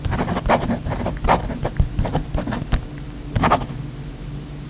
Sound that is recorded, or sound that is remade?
recorded